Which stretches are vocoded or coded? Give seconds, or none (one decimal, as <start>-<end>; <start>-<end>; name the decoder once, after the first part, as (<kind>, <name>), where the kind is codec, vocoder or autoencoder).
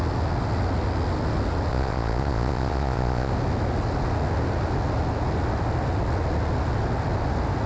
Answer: 1.7-3.3 (vocoder, Vocos)